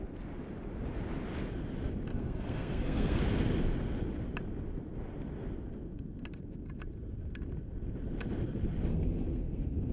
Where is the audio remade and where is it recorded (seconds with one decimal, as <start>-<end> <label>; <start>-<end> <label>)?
0.0-2.1 recorded; 2.1-3.2 remade; 3.2-8.9 recorded; 8.9-9.9 remade